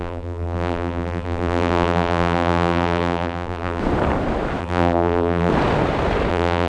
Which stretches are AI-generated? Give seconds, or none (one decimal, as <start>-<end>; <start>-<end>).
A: 0.0-3.8; 4.6-5.5; 6.3-6.7

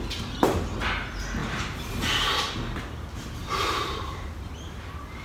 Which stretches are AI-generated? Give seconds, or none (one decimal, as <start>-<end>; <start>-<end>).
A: 1.4-1.9; 3.4-4.3

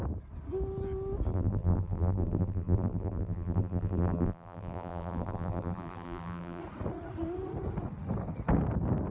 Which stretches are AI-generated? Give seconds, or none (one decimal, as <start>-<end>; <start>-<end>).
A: 1.3-6.6

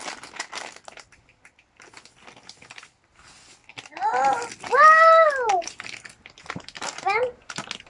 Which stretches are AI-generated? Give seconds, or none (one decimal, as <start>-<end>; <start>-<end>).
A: none